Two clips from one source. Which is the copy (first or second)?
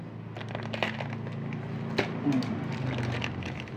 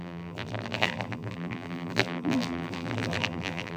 second